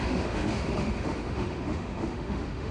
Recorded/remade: remade